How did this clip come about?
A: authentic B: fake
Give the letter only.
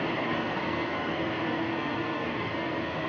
B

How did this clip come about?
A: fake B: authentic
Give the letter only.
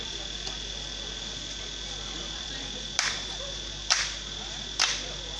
A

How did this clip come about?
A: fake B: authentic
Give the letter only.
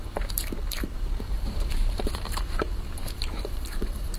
A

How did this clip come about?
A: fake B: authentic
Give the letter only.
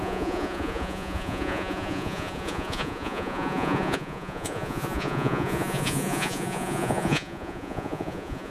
A